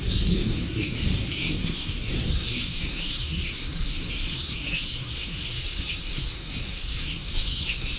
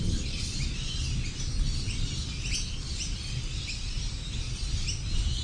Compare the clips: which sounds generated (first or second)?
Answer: first